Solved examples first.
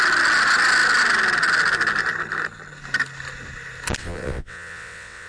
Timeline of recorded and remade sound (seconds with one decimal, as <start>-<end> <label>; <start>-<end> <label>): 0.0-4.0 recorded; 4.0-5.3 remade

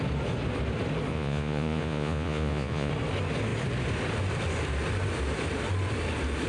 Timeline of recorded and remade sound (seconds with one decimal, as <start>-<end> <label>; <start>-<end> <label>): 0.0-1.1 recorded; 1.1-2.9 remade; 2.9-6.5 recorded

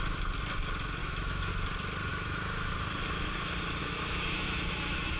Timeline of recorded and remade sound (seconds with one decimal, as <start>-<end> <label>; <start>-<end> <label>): 0.0-1.0 recorded; 1.0-1.5 remade; 1.5-2.1 recorded; 2.1-2.7 remade; 2.7-3.8 recorded; 3.8-5.2 remade